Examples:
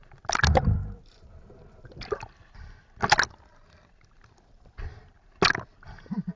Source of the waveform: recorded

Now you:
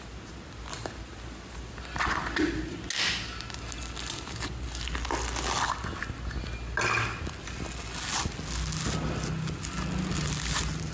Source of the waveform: recorded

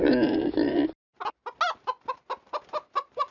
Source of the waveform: recorded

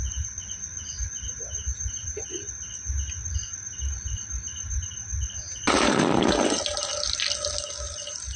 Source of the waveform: recorded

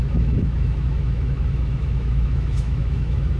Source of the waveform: remade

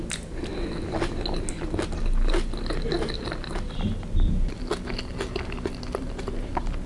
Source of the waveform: recorded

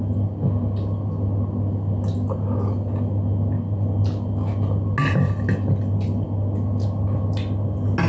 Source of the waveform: recorded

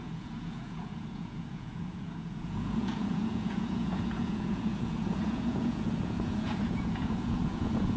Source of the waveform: remade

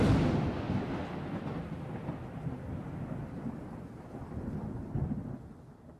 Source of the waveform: recorded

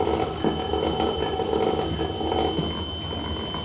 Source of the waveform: recorded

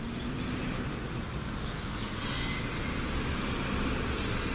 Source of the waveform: recorded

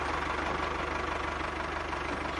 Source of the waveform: recorded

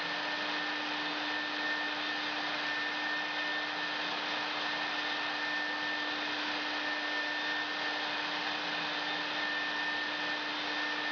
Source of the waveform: recorded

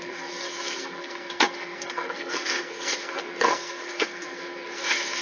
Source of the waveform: remade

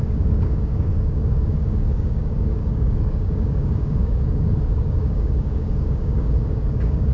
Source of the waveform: remade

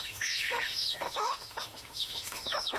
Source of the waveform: remade